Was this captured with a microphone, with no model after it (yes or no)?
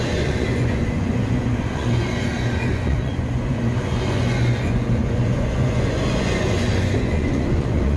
no